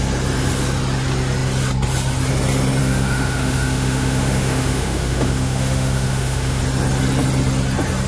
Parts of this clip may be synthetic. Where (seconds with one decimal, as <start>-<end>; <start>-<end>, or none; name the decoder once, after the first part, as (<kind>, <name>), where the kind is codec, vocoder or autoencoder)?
2.8-6.6 (autoencoder, DAC-VAE)

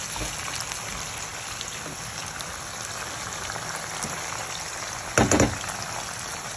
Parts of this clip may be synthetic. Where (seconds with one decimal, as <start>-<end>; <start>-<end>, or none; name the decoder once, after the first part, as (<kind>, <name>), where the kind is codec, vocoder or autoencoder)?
none

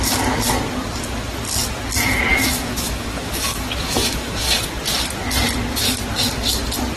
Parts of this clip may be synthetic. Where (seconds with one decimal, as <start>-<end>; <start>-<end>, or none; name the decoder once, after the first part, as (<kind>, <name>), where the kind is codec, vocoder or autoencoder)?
2.3-4.6 (autoencoder, DAC-VAE)

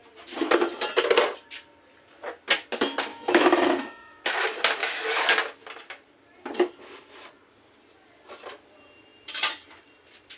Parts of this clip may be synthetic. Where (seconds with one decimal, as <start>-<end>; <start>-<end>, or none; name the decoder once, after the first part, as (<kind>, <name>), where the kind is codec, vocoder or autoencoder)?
3.1-4.2 (autoencoder, DAC-VAE); 4.8-5.3